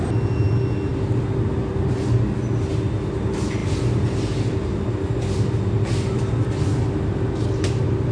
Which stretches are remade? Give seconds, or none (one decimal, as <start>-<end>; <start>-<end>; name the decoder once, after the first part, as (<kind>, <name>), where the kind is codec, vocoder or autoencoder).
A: none